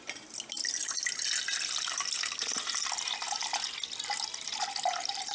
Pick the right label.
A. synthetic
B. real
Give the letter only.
B